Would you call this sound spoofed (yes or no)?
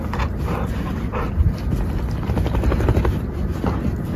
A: no